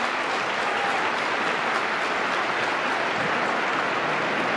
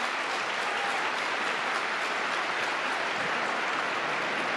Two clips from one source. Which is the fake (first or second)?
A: second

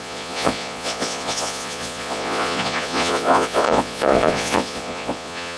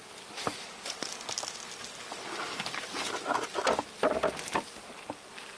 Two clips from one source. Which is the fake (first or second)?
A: first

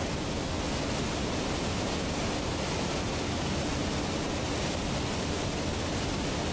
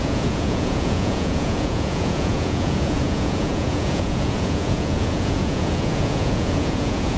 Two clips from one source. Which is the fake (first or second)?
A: second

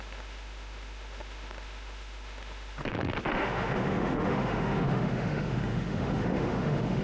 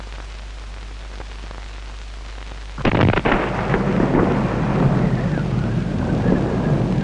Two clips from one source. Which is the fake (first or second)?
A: first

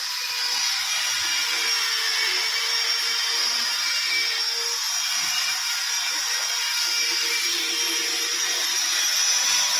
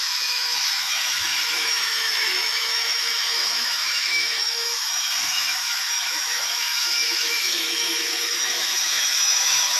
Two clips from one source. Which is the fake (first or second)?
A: second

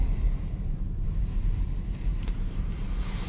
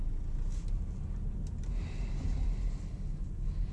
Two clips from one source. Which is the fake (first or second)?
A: first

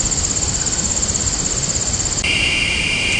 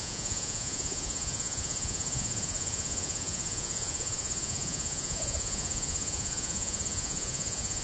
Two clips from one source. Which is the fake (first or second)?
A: second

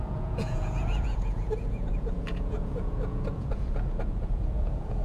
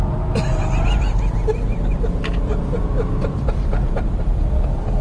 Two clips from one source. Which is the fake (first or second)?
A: first